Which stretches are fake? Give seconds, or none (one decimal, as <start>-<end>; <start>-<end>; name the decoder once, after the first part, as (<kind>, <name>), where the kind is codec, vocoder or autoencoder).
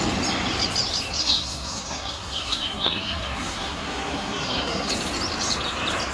1.2-4.9 (codec, SNAC)